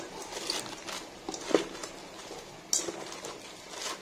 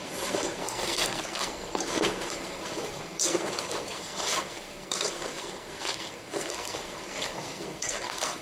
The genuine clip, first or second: first